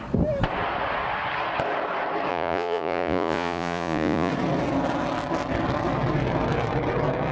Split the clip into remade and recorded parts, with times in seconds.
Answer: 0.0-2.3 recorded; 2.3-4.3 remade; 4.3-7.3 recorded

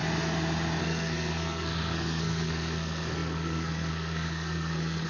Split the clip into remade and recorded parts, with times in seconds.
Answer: 0.0-0.8 recorded; 0.8-5.1 remade

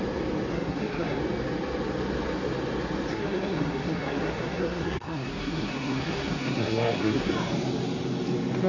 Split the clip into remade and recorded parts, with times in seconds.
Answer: 0.0-0.5 recorded; 0.5-1.2 remade; 1.2-3.1 recorded; 3.1-7.3 remade; 7.3-8.7 recorded